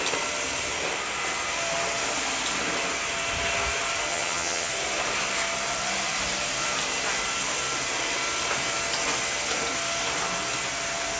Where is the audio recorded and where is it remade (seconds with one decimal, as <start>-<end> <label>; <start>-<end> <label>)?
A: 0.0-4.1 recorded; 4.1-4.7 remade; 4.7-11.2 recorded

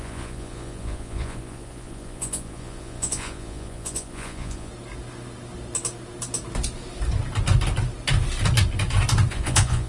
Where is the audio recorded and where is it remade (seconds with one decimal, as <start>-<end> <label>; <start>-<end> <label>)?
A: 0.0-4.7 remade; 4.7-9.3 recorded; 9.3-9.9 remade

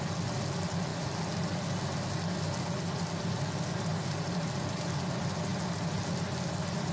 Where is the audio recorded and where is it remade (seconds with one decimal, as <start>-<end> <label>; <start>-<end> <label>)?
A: 0.0-6.9 recorded

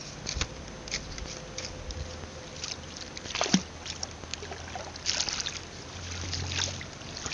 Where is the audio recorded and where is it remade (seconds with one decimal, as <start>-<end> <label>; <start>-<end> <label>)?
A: 0.0-7.3 recorded